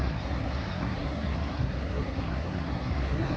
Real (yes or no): no